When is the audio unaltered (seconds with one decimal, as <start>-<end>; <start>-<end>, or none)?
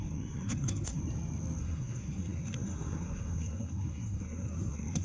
1.0-1.6